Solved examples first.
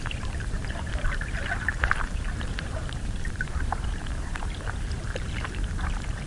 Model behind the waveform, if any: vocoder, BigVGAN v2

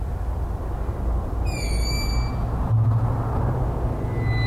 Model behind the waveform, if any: none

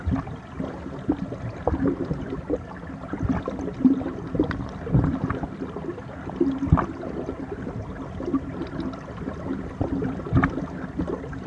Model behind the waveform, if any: none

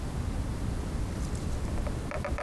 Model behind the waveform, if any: vocoder, BigVGAN v2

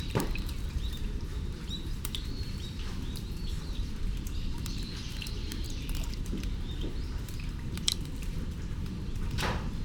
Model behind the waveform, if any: vocoder, BigVGAN v2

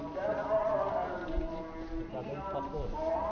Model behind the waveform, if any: none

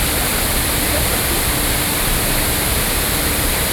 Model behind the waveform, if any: vocoder, BigVGAN v2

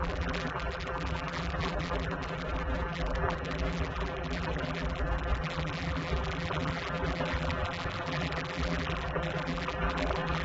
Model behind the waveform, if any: vocoder, BigVGAN v2